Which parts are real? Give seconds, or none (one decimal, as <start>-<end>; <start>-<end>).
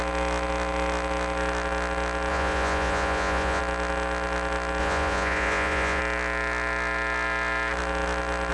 0.0-2.3; 3.6-4.8; 6.0-8.5